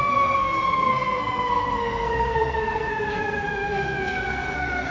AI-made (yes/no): yes